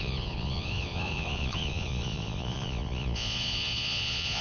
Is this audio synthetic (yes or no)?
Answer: yes